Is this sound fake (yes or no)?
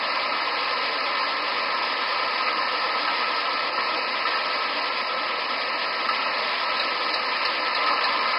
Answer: yes